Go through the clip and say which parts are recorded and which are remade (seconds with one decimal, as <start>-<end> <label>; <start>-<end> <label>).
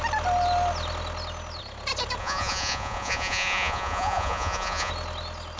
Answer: 0.0-2.2 recorded; 2.2-4.9 remade; 4.9-5.6 recorded